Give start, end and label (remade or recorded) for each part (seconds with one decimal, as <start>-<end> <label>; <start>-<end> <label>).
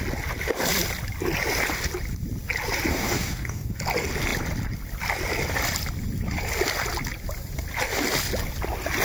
0.0-2.9 recorded; 2.9-3.7 remade; 3.7-9.0 recorded